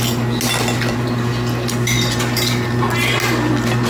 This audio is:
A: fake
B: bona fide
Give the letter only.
B